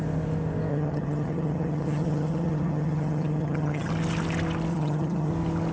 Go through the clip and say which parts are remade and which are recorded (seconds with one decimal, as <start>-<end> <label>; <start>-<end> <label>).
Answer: 0.0-0.7 recorded; 0.7-3.9 remade; 3.9-4.7 recorded; 4.7-5.3 remade; 5.3-5.7 recorded